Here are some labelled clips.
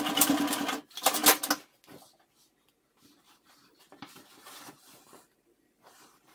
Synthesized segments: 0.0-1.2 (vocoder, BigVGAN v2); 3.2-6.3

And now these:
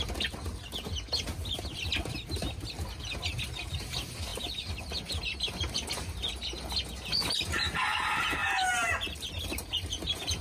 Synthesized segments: none

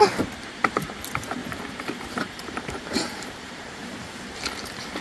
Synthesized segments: 1.4-4.2 (vocoder, BigVGAN v2)

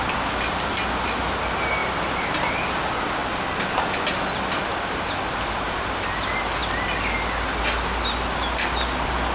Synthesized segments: 1.8-2.4 (vocoder, BigVGAN v2)

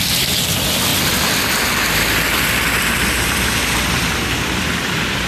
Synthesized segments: 0.0-0.9 (vocoder, BigVGAN v2); 2.7-5.3

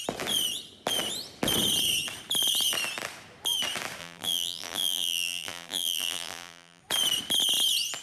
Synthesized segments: 4.0-6.8 (vocoder, BigVGAN v2)